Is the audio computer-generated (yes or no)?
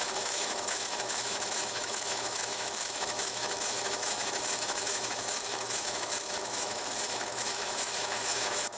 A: yes